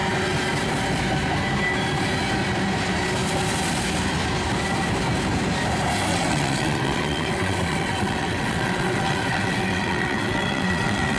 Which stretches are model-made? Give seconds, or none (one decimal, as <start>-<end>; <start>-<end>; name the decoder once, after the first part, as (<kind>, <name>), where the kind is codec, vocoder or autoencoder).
6.1-11.2 (vocoder, WaveNeXt)